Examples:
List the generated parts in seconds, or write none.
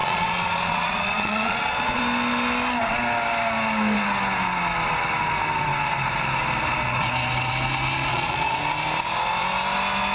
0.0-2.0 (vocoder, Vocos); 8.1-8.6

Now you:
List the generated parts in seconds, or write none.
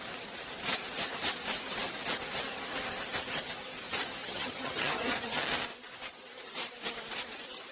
4.2-5.5 (vocoder, HiFi-GAN)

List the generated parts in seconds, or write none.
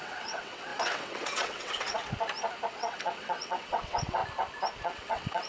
0.0-2.0 (vocoder, WaveNeXt); 2.7-4.2; 4.8-5.5